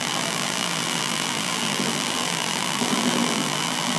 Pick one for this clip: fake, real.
fake